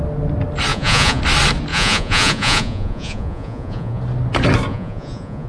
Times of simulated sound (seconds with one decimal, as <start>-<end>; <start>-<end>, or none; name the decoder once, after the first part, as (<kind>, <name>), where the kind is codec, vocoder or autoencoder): 0.7-1.2 (vocoder, Vocos); 1.7-4.0; 4.7-5.5